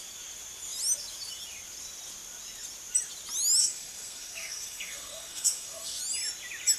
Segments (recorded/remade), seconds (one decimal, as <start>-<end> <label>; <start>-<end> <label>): 0.0-3.6 recorded; 3.6-6.0 remade; 6.0-6.8 recorded